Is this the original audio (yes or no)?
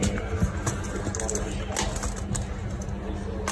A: yes